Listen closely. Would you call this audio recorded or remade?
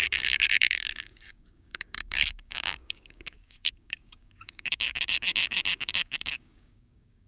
remade